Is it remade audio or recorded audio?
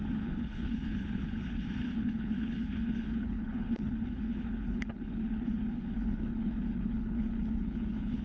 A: remade